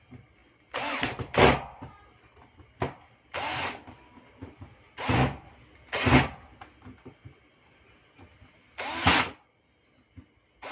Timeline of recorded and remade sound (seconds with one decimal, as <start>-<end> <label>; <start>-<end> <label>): 0.0-10.7 recorded